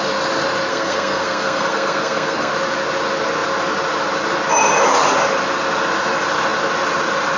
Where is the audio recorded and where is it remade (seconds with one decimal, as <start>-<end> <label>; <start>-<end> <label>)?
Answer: 0.0-0.7 recorded; 0.7-2.5 remade; 2.5-7.4 recorded

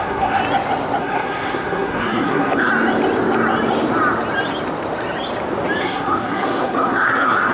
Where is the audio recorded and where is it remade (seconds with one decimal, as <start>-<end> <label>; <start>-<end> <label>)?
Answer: 0.0-0.4 remade; 0.4-1.0 recorded; 1.0-2.7 remade; 2.7-5.8 recorded; 5.8-7.5 remade

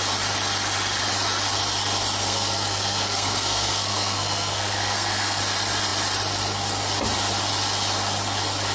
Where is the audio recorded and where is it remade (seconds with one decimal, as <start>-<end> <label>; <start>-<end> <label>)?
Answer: 0.0-2.2 recorded; 2.2-5.4 remade; 5.4-8.7 recorded

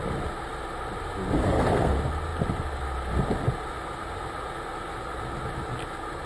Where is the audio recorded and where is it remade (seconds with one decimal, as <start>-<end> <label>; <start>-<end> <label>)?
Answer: 0.0-1.4 recorded; 1.4-1.9 remade; 1.9-6.3 recorded

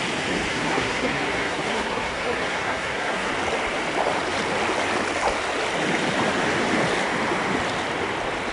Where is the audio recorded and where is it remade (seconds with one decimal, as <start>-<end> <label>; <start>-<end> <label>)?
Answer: 0.0-0.5 recorded; 0.5-3.3 remade; 3.3-8.5 recorded

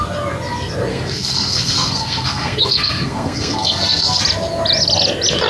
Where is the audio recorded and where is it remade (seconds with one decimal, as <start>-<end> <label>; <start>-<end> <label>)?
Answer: 0.0-0.9 recorded; 0.9-4.2 remade; 4.2-5.5 recorded

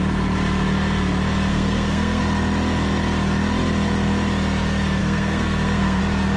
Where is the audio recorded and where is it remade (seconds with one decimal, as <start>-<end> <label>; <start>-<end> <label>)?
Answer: 0.0-1.5 recorded; 1.5-2.2 remade; 2.2-5.0 recorded; 5.0-6.0 remade; 6.0-6.4 recorded